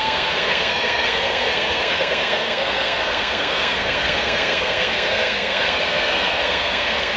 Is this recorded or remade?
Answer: remade